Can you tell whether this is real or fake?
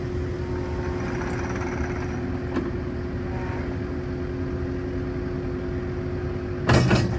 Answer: real